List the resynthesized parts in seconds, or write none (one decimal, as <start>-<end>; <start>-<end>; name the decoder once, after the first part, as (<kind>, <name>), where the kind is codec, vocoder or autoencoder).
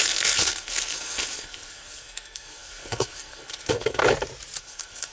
0.0-4.0 (codec, SNAC); 4.6-5.1